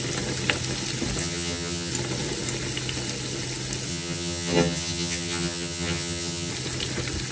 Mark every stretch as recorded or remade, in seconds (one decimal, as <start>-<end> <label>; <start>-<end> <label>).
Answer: 0.0-1.2 recorded; 1.2-1.9 remade; 1.9-3.9 recorded; 3.9-6.5 remade; 6.5-7.3 recorded